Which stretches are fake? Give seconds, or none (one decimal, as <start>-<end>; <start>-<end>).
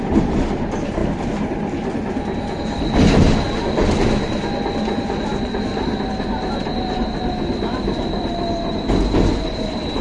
0.0-1.0; 6.1-10.0